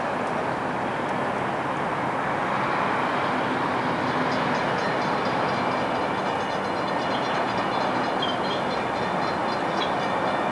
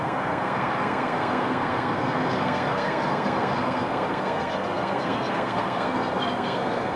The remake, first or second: second